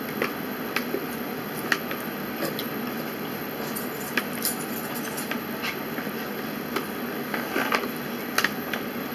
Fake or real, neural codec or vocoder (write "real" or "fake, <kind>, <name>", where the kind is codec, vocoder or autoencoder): real